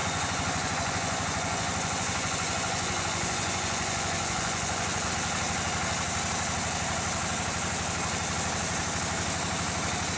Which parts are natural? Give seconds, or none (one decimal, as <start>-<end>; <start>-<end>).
5.1-10.2